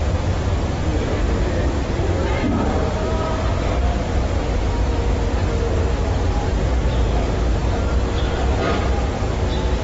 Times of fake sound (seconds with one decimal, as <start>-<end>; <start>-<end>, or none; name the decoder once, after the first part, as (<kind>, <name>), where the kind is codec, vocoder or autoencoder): none